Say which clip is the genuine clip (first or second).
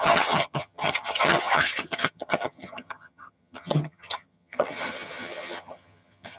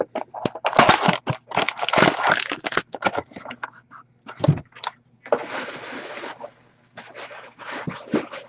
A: second